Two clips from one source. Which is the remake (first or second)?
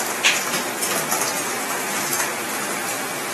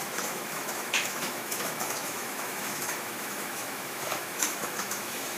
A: second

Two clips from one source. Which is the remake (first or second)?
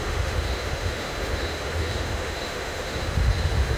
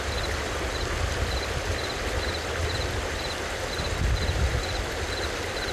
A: first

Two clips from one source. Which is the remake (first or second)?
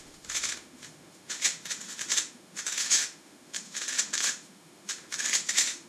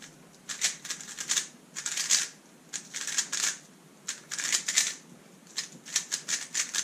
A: first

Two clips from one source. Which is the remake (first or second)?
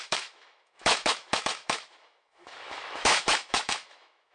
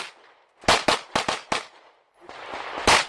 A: first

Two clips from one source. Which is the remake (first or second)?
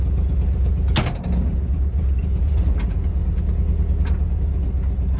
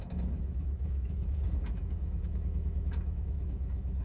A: second